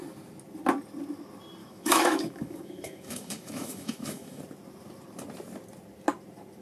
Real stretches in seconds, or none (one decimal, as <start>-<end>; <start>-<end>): 0.0-1.6; 4.4-6.6